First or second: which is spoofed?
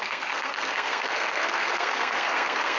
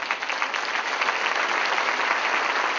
first